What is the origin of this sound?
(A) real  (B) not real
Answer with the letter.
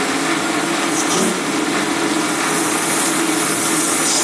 A